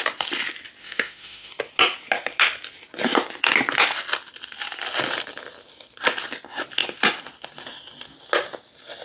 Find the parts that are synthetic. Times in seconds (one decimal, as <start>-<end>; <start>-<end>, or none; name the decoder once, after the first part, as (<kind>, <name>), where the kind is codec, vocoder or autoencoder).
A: 0.8-1.5 (autoencoder, DAC-VAE)

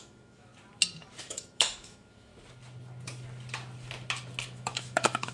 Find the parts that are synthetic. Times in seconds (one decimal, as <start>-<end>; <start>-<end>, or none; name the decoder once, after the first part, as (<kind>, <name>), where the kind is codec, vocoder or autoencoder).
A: 0.0-0.5 (autoencoder, DAC-VAE); 1.2-2.3; 4.4-5.3

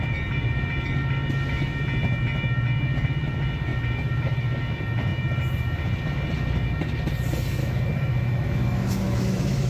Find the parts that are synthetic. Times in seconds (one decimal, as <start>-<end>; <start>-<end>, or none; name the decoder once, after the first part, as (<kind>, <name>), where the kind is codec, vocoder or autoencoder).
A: 7.6-9.7 (autoencoder, DAC-VAE)

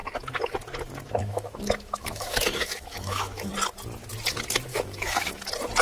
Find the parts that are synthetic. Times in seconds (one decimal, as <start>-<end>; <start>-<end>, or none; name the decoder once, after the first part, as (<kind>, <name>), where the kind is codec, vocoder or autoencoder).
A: 1.2-3.5 (autoencoder, DAC-VAE); 4.7-5.3

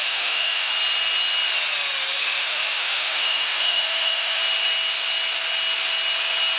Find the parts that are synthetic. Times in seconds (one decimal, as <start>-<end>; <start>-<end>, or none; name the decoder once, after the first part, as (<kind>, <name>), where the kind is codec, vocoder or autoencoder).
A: 0.0-0.7 (autoencoder, DAC-VAE); 2.2-4.4

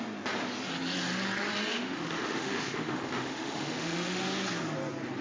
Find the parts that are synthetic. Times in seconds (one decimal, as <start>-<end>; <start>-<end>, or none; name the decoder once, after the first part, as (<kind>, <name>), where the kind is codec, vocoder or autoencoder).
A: 1.7-4.2 (autoencoder, DAC-VAE)

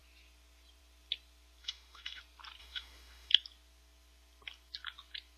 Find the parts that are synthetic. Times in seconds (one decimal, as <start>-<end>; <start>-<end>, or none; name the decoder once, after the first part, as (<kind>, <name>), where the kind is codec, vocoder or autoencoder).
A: 1.6-2.2 (autoencoder, DAC-VAE); 2.6-3.3

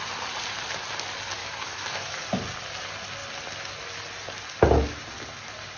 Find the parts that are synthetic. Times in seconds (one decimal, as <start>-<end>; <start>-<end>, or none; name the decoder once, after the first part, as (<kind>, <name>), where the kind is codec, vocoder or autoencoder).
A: 1.4-2.2 (autoencoder, DAC-VAE)